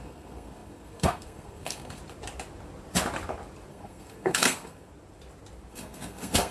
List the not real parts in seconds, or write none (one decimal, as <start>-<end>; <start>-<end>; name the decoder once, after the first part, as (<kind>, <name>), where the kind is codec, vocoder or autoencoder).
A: 0.0-2.0 (codec, SNAC); 3.7-4.9; 5.7-6.5